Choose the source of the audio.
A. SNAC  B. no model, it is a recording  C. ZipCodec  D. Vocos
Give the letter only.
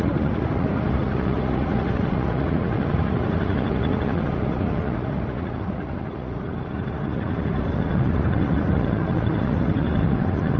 D